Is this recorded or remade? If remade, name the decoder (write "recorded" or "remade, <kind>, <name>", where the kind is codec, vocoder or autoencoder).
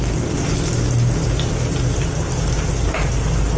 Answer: recorded